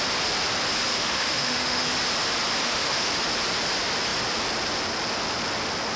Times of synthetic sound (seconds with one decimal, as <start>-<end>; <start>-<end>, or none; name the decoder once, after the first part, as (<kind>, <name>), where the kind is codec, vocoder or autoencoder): 0.9-1.9 (autoencoder, DAC-VAE); 2.6-3.1